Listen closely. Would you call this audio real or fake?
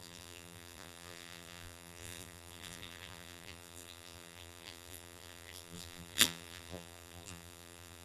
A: fake